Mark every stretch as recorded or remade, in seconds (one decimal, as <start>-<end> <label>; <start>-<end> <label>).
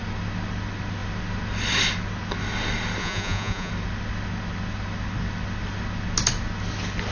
0.0-3.0 recorded; 3.0-3.7 remade; 3.7-7.1 recorded